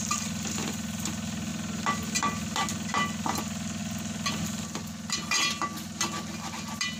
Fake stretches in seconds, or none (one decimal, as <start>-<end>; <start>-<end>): none